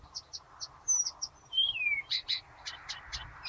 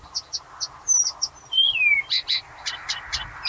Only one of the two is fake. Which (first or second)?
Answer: first